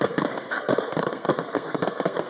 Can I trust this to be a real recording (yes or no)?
no